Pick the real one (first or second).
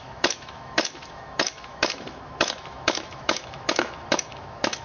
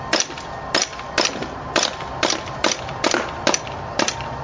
second